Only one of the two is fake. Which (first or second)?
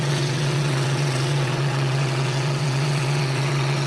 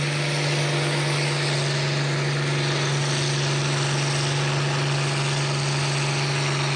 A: first